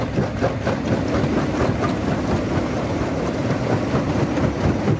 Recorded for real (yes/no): yes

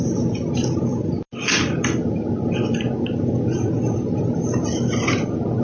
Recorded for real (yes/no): yes